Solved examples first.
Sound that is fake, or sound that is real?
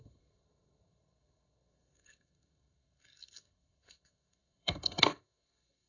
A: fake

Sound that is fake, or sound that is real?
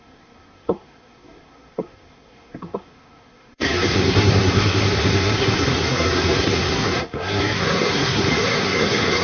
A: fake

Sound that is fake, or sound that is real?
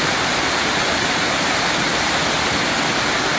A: real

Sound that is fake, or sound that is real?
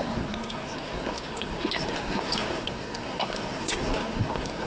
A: fake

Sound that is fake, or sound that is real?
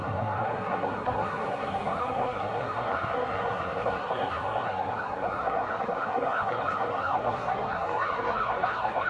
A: fake